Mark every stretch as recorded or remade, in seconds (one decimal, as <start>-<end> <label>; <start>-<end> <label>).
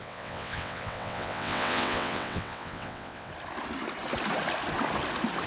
0.0-3.3 remade; 3.3-5.5 recorded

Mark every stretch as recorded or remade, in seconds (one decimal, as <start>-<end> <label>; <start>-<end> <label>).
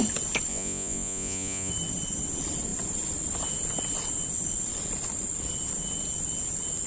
0.0-0.5 recorded; 0.5-1.7 remade; 1.7-6.9 recorded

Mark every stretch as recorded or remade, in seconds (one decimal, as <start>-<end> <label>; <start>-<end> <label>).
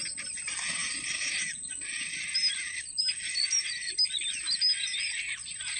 0.0-5.8 recorded